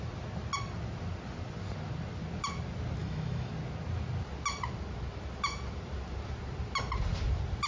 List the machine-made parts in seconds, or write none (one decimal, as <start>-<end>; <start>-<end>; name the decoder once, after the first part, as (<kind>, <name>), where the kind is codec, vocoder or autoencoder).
3.0-3.5 (autoencoder, DAC-VAE)